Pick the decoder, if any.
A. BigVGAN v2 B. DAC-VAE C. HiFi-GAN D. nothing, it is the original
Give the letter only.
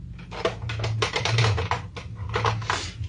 D